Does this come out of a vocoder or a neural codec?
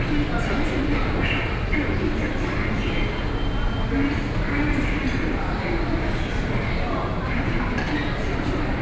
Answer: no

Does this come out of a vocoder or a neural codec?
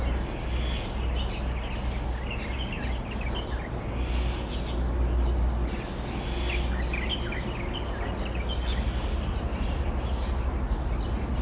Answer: no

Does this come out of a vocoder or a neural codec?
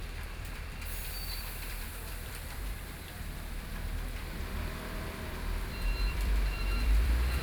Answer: yes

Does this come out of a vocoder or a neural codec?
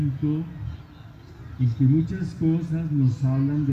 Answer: no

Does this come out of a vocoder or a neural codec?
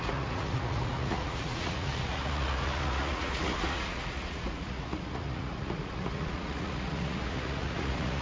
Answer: yes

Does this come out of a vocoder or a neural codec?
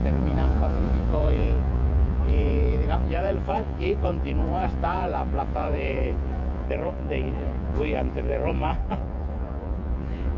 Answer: yes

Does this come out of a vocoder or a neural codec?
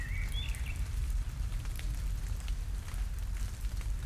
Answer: no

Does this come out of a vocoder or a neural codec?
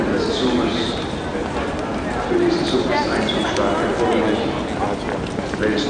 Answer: no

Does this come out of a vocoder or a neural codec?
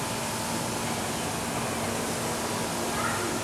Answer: no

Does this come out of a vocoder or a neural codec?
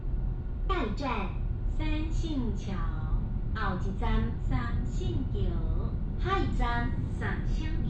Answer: no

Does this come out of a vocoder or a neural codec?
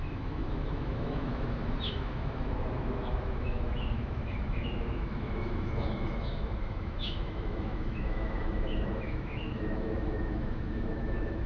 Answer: yes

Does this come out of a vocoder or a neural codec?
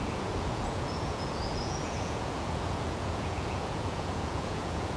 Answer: yes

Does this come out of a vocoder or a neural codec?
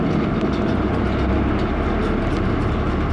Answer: no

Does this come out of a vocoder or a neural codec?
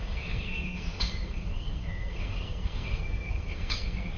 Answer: yes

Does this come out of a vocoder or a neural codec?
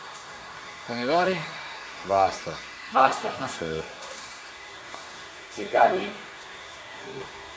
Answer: yes